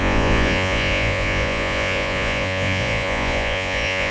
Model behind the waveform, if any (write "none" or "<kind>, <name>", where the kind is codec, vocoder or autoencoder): vocoder, Vocos